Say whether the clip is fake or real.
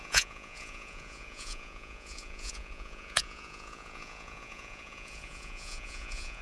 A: fake